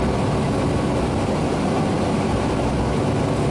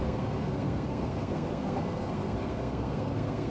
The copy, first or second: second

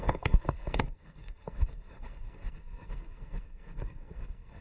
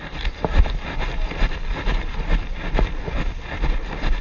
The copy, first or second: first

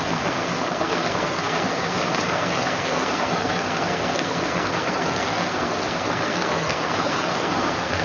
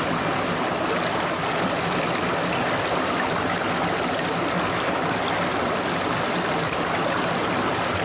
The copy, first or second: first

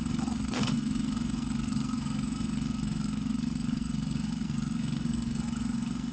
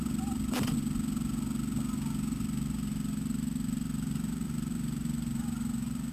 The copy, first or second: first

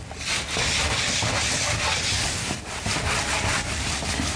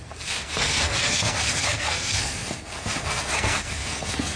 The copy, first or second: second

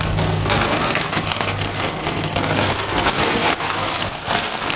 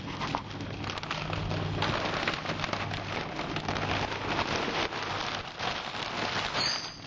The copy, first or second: first